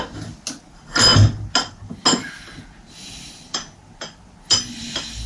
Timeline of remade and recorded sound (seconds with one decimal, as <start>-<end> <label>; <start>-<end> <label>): 0.0-5.3 recorded